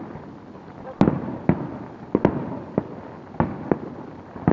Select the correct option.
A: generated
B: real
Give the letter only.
B